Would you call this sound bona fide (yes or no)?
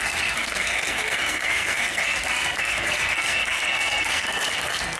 no